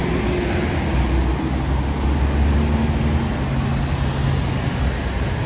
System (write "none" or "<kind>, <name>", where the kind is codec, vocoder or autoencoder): none